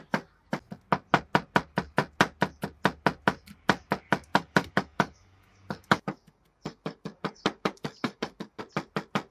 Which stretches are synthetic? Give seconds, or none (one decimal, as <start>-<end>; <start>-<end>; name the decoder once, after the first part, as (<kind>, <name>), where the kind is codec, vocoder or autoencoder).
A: 4.3-8.6 (codec, DAC)

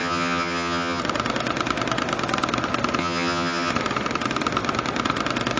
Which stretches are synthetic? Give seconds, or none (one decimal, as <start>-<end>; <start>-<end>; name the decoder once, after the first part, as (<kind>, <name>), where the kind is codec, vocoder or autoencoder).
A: 0.0-1.0 (vocoder, HiFi-GAN); 3.0-3.7